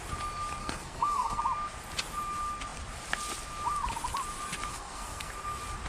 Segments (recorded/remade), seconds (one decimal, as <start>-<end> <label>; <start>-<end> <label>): 0.0-0.6 recorded; 0.6-1.4 remade; 1.4-4.7 recorded; 4.7-5.3 remade; 5.3-5.9 recorded